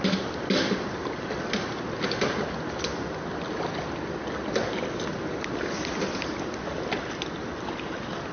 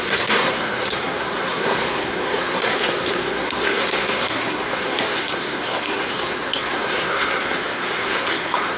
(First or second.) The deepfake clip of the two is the second